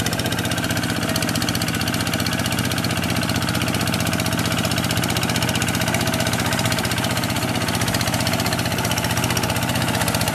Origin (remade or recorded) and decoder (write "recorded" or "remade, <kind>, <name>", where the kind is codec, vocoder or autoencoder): recorded